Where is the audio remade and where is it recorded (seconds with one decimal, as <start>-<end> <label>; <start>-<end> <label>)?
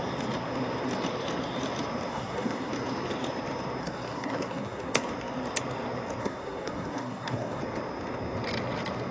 0.0-2.1 recorded; 2.1-2.7 remade; 2.7-3.8 recorded; 3.8-5.1 remade; 5.1-6.2 recorded; 6.2-7.6 remade; 7.6-9.1 recorded